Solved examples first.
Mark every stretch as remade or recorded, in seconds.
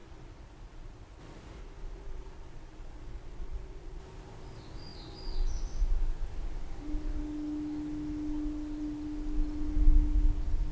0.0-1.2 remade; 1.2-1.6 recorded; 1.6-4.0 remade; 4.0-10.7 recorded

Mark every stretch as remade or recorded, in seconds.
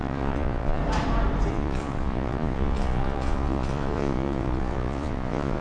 0.0-0.8 remade; 0.8-1.5 recorded; 1.5-5.6 remade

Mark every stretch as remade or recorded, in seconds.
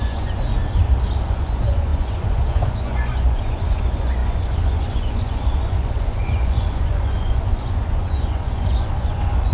0.0-0.5 remade; 0.5-1.3 recorded; 1.3-9.5 remade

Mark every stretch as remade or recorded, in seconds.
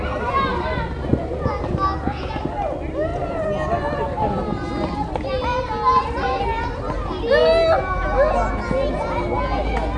0.0-10.0 recorded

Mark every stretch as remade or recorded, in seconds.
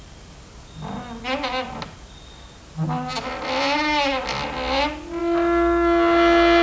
0.0-6.6 recorded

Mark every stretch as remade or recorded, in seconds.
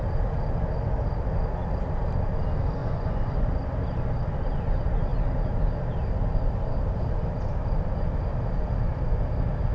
0.0-2.8 recorded; 2.8-3.5 remade; 3.5-9.7 recorded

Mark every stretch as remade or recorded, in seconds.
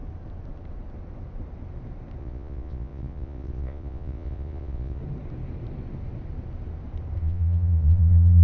0.0-2.2 recorded; 2.2-5.0 remade; 5.0-7.2 recorded; 7.2-8.4 remade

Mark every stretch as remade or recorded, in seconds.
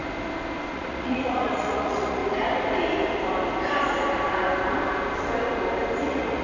0.0-0.7 recorded; 0.7-2.2 remade; 2.2-6.0 recorded; 6.0-6.4 remade